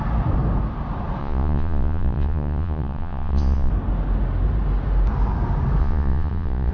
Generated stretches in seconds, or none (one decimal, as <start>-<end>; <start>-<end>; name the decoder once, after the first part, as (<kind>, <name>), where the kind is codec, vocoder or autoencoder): 1.2-3.7 (vocoder, Vocos); 5.8-6.7